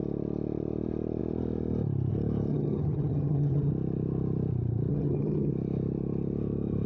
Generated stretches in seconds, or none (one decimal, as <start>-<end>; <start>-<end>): 2.5-3.7; 4.9-5.5